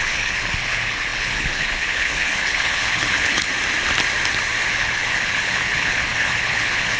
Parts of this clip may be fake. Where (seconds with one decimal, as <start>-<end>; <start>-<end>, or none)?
0.0-3.5; 4.7-7.0